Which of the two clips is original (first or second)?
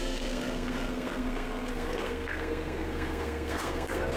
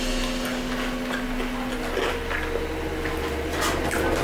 second